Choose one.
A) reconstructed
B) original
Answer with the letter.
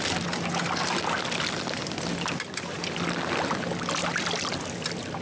B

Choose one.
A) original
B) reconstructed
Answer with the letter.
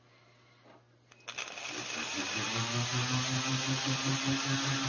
A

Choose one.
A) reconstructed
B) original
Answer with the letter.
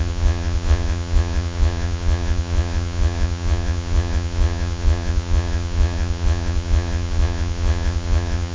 A